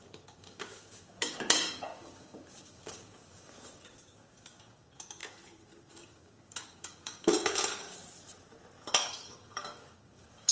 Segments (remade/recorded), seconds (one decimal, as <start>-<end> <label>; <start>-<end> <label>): 0.0-5.2 remade; 5.2-5.9 recorded; 5.9-8.0 remade; 8.0-9.0 recorded; 9.0-10.5 remade